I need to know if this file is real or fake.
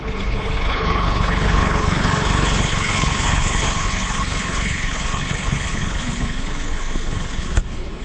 fake